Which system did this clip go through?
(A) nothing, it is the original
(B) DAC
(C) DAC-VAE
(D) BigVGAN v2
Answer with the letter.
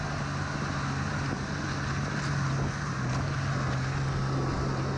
A